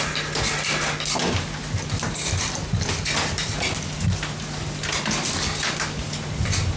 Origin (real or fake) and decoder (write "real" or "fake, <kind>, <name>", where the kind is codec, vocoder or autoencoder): real